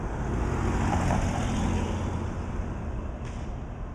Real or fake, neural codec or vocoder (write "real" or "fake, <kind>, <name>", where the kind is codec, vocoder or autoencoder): real